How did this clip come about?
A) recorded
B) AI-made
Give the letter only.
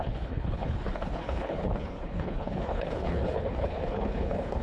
B